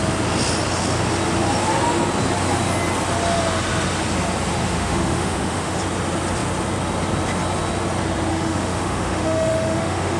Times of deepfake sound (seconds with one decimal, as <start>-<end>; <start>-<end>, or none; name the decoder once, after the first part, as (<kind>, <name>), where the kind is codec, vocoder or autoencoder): 4.6-5.8 (autoencoder, DAC-VAE); 8.3-10.2